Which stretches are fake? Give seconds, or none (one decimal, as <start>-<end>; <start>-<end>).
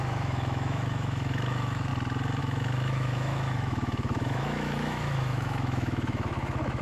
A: 0.0-1.9; 2.4-6.8